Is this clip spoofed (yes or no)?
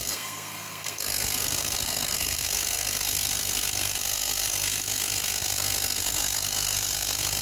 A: yes